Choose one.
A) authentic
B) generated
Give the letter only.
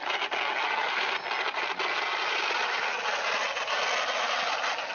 A